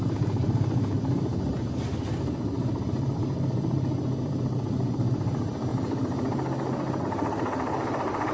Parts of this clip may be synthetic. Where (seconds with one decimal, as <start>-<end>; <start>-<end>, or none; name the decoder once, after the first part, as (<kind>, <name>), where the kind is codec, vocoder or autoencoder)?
0.0-1.3 (vocoder, BigVGAN v2); 2.1-5.7; 7.0-8.3